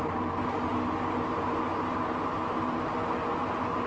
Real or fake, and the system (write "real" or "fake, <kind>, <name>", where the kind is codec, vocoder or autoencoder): real